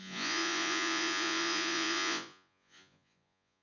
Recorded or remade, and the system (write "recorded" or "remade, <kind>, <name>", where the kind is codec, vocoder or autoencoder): remade, vocoder, Vocos